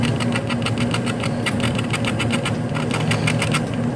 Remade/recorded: recorded